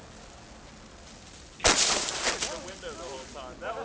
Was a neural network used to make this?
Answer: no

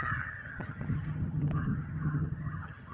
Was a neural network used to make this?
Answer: yes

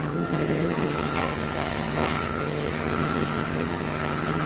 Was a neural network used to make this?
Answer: yes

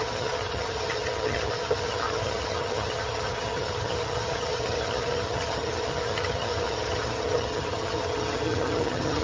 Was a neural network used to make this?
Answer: yes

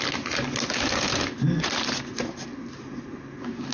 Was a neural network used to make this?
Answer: no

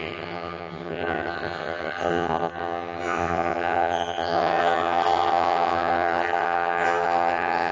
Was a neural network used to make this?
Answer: yes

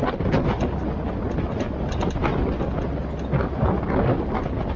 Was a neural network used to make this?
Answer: no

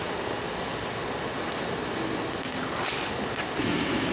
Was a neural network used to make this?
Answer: no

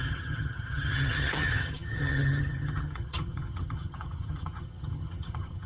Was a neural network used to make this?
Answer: yes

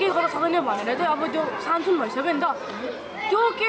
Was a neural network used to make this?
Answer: no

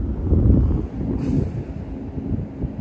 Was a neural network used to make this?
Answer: no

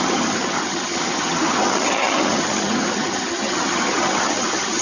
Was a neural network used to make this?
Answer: yes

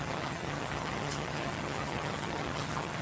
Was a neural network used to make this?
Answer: yes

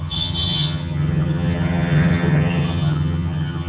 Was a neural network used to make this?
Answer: yes